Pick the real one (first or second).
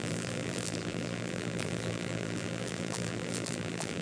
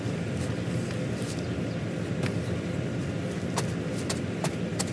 second